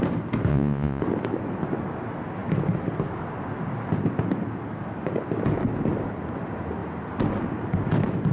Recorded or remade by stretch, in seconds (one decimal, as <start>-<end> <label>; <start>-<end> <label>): 0.0-0.5 recorded; 0.5-1.0 remade; 1.0-8.3 recorded